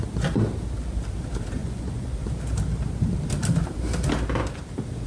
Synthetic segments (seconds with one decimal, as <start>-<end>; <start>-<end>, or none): 1.6-2.1